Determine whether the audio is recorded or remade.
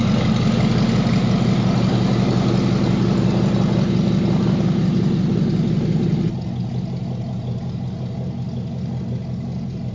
recorded